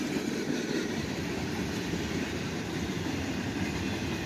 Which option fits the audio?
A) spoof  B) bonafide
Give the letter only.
B